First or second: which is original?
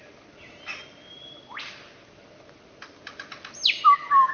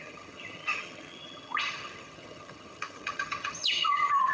first